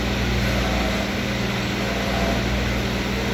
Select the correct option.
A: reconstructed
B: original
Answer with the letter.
B